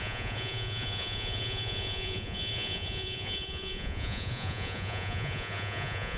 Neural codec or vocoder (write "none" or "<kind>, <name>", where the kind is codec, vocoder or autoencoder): vocoder, Vocos